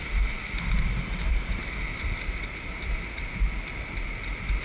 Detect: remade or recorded recorded